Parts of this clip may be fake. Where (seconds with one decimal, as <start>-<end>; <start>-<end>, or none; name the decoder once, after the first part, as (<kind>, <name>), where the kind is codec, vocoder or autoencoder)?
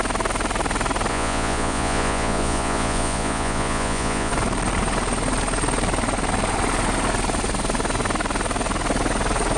1.1-4.3 (vocoder, Vocos)